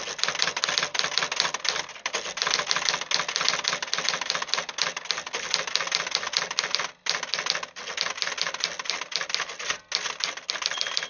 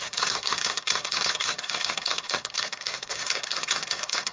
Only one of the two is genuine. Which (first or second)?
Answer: first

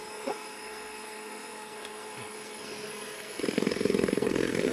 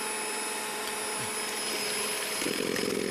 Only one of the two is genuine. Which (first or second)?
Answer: second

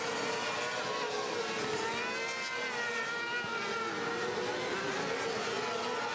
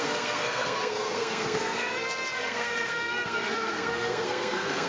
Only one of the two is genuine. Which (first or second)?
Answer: first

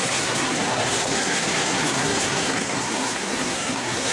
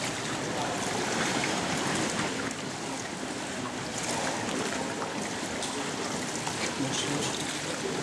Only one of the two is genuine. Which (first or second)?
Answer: second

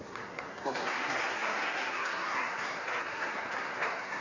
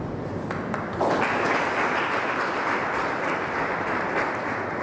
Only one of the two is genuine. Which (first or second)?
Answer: second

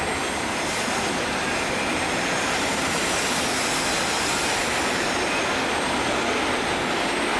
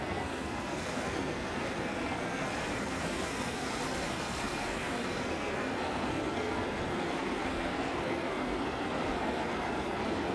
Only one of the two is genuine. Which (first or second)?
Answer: first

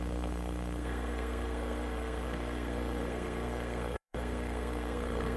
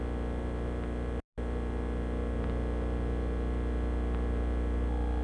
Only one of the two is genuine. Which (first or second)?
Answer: second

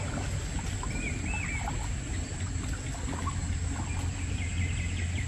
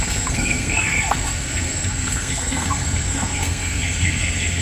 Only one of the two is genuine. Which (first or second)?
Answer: first